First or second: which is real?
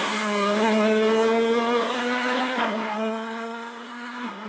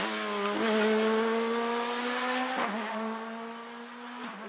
second